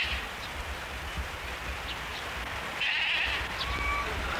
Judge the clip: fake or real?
fake